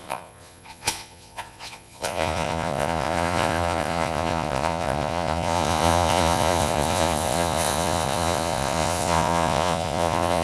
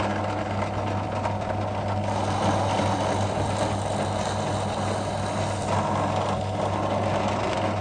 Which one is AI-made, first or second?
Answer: first